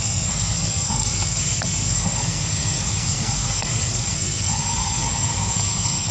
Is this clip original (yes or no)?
no